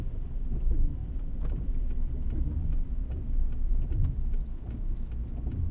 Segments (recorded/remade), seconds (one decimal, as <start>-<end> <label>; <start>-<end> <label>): 0.0-1.0 recorded; 1.0-4.4 remade; 4.4-5.7 recorded